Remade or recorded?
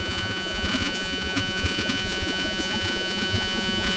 remade